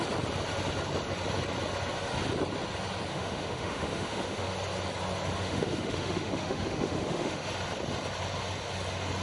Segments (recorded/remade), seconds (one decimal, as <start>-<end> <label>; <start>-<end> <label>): 0.0-3.1 recorded; 3.1-4.5 remade; 4.5-5.4 recorded; 5.4-7.5 remade; 7.5-9.2 recorded